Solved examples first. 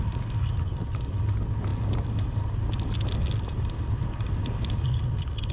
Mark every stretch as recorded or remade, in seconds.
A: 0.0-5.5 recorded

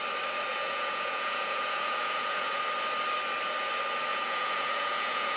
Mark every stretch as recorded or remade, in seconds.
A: 0.0-0.5 recorded; 0.5-2.6 remade; 2.6-4.1 recorded; 4.1-5.4 remade

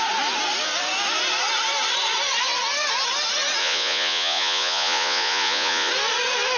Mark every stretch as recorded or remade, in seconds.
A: 0.0-3.6 recorded; 3.6-5.9 remade; 5.9-6.6 recorded

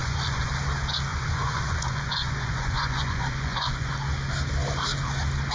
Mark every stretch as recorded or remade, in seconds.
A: 0.0-0.5 remade; 0.5-1.1 recorded; 1.1-3.9 remade; 3.9-5.5 recorded

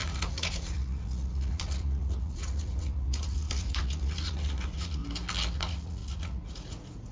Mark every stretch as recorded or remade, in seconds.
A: 0.0-5.0 remade; 5.0-5.5 recorded; 5.5-7.1 remade